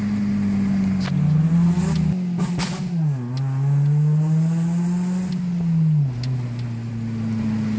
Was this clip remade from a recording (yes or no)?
no